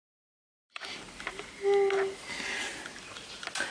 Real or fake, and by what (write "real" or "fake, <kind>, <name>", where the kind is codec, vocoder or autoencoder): real